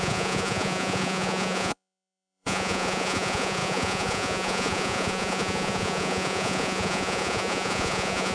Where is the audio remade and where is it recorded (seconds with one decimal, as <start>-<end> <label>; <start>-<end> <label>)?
0.0-8.3 remade